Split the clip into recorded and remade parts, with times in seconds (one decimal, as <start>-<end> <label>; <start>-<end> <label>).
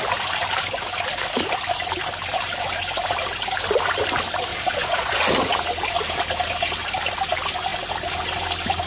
0.0-4.5 recorded; 4.5-5.2 remade; 5.2-8.9 recorded